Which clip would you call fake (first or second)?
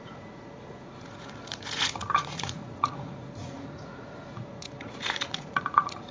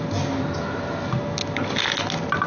first